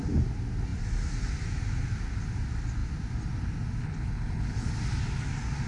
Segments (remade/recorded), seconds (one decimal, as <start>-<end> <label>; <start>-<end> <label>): 0.0-3.8 recorded; 3.8-4.7 remade; 4.7-5.7 recorded